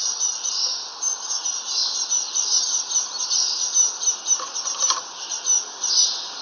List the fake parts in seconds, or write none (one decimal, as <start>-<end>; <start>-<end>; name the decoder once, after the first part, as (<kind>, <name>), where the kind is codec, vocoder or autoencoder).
0.0-0.6 (vocoder, BigVGAN v2); 1.8-2.6